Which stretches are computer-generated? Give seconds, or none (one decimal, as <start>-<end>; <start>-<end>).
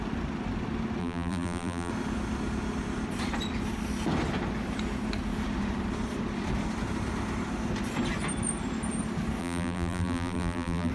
1.0-1.9; 9.4-10.9